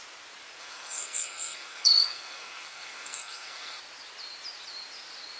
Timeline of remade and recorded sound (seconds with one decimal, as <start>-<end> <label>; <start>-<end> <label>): 0.0-0.6 recorded; 0.6-3.8 remade; 3.8-5.4 recorded